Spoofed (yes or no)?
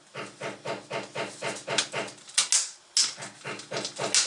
no